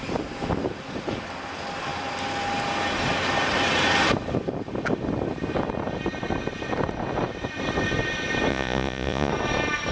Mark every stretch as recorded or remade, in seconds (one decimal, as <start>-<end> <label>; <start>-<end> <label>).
0.0-8.5 recorded; 8.5-9.3 remade; 9.3-9.9 recorded